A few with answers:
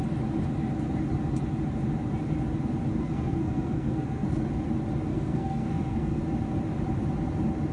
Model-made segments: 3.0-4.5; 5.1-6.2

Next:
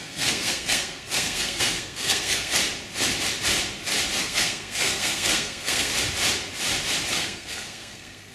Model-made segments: 0.0-2.6; 4.2-5.9; 7.1-8.3

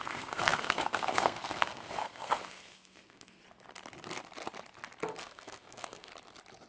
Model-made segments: 0.0-3.4; 5.2-6.1

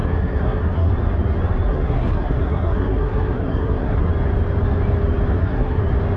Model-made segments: 0.0-0.9; 1.7-4.1; 5.3-5.8